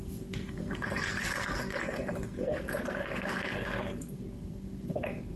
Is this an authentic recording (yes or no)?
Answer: no